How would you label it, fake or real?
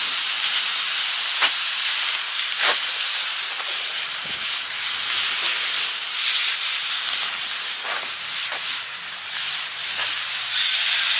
real